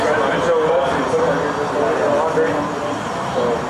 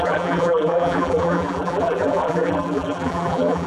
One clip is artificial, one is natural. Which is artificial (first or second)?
second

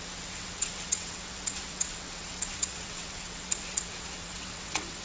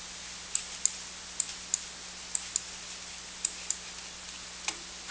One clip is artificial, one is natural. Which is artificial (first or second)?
first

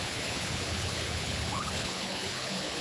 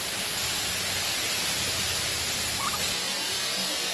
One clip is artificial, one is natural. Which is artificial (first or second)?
first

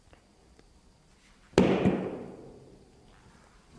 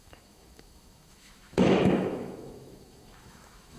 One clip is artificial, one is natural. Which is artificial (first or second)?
second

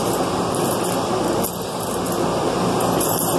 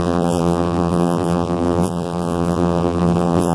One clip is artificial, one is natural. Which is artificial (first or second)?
second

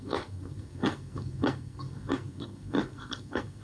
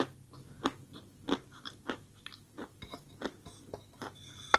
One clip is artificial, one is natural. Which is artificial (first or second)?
first